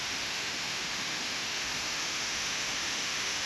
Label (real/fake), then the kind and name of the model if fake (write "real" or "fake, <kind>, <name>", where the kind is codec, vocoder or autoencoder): fake, autoencoder, DAC-VAE